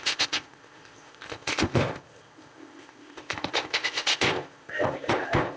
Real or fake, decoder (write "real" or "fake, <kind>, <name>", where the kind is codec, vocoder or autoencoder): fake, codec, ZipCodec